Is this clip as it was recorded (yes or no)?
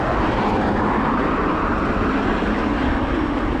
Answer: yes